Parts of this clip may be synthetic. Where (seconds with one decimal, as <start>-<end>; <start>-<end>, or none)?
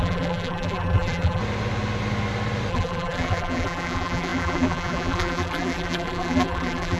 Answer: 0.0-1.4; 2.7-7.0